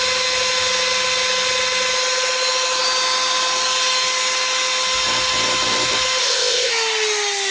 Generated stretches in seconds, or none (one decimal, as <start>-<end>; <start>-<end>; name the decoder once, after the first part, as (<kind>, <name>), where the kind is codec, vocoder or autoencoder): 6.2-6.7 (codec, ZipCodec)